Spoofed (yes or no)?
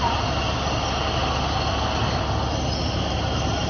no